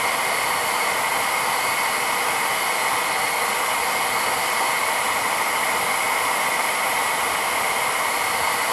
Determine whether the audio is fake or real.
real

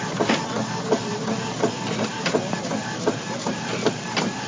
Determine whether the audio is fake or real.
real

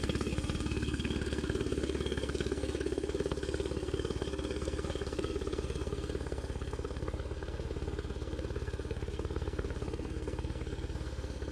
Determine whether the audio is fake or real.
fake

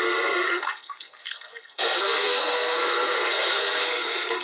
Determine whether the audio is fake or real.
fake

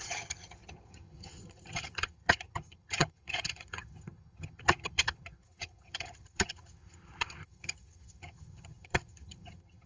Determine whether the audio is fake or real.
fake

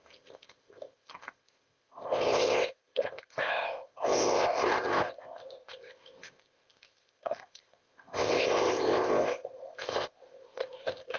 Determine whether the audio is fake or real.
fake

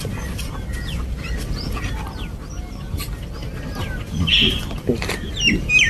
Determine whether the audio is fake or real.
real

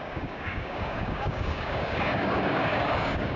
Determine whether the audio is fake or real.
fake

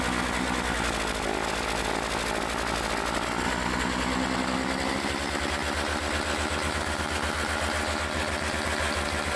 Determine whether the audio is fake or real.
real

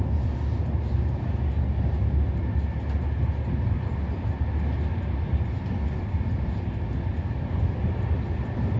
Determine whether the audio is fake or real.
real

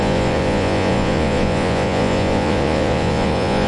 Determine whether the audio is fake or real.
fake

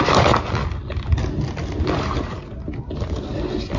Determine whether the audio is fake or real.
real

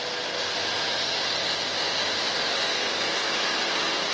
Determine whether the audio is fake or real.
real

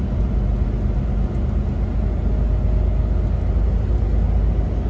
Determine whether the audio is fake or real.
real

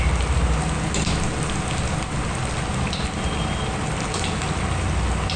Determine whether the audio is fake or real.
real